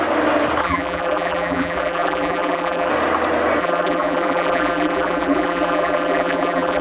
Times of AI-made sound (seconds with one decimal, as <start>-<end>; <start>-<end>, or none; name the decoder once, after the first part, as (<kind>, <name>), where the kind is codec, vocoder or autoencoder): 0.6-2.9 (vocoder, BigVGAN v2); 3.6-6.8